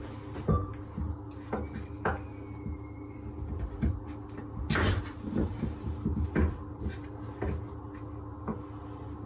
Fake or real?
real